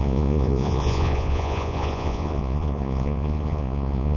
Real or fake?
fake